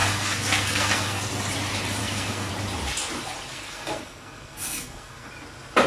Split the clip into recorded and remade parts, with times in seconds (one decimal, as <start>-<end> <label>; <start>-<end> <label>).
0.0-1.3 remade; 1.3-2.0 recorded; 2.0-2.5 remade; 2.5-3.5 recorded; 3.5-5.3 remade; 5.3-5.9 recorded